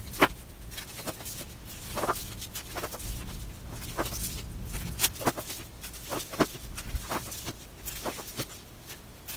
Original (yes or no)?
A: yes